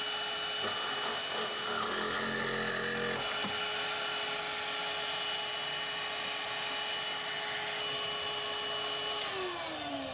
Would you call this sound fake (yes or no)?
no